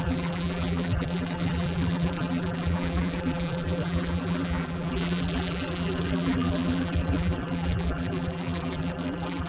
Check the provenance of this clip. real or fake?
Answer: fake